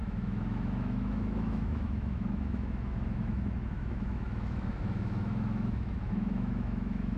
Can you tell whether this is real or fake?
fake